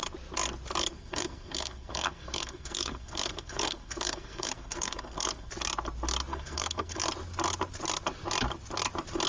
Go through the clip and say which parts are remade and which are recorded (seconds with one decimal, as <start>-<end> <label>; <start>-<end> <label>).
0.0-0.9 recorded; 0.9-5.5 remade; 5.5-6.3 recorded; 6.3-7.0 remade; 7.0-9.3 recorded